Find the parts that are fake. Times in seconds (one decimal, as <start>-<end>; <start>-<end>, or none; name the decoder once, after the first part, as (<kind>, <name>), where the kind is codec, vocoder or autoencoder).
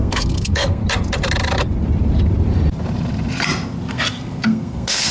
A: 0.0-0.8 (codec, SNAC); 3.9-5.1